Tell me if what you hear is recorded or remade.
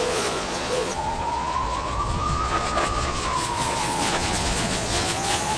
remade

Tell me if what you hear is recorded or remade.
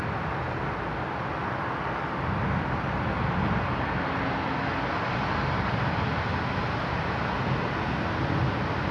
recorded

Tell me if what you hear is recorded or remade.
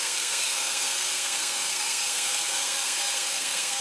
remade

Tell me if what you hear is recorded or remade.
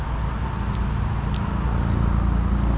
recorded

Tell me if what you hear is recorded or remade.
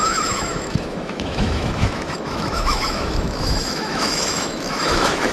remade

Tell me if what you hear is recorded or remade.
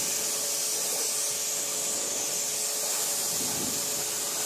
recorded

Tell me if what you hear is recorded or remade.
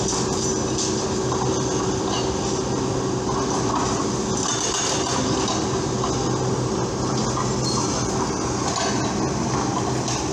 recorded